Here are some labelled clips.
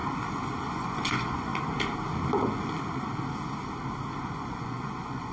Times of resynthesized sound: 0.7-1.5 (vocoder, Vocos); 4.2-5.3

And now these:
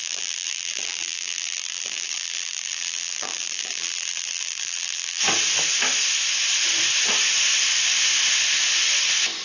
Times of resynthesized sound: 0.0-5.2 (vocoder, BigVGAN v2)